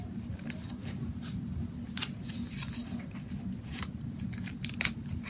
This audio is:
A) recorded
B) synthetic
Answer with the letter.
A